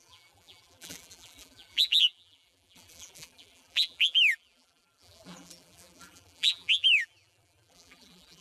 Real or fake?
fake